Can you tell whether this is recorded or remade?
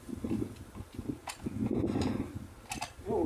recorded